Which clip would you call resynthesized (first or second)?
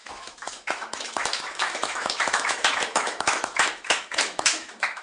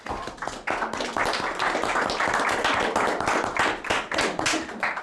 first